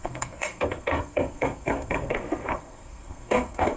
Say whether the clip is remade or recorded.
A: remade